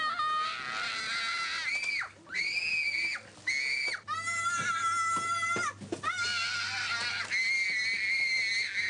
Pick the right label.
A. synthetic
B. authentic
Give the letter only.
B